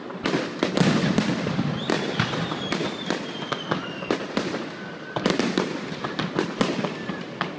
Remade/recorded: remade